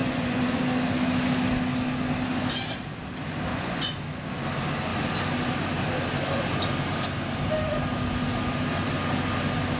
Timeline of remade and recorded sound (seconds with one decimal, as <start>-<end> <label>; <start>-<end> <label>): 0.0-0.6 remade; 0.6-3.5 recorded; 3.5-4.0 remade; 4.0-9.8 recorded